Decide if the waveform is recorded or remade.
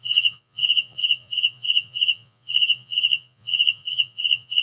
remade